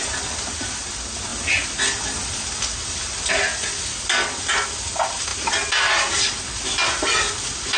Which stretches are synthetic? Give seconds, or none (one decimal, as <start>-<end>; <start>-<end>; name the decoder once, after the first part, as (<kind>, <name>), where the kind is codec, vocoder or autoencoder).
none